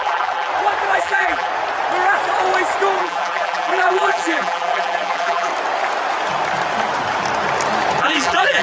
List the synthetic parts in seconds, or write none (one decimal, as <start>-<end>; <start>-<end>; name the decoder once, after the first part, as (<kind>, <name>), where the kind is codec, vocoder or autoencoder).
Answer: 0.0-0.5 (vocoder, BigVGAN v2); 1.0-1.5; 3.0-5.5; 8.0-8.6